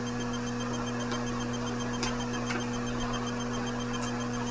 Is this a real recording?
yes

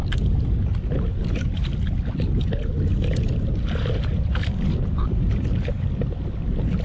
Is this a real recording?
yes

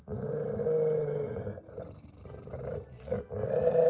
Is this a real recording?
yes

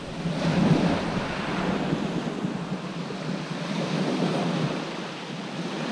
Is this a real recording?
yes